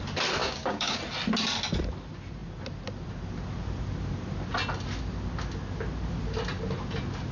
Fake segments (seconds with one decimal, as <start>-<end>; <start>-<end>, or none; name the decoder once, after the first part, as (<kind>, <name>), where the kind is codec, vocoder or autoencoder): 0.4-1.0 (codec, DAC)